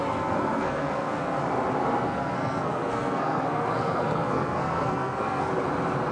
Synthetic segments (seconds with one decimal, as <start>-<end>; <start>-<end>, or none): 0.0-1.4; 1.8-5.5